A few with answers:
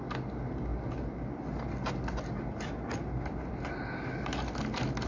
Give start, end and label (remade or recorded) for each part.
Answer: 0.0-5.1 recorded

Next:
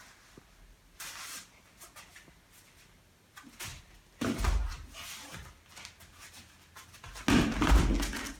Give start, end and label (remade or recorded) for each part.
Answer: 0.0-8.4 recorded

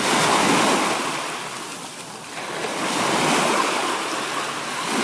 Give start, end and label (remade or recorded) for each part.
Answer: 0.0-5.0 recorded

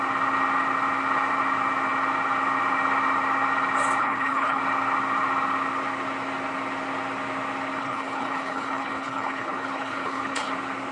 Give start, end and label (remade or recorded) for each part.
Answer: 0.0-4.0 recorded; 4.0-4.6 remade; 4.6-7.8 recorded; 7.8-10.5 remade; 10.5-10.9 recorded